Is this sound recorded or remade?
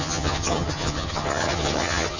remade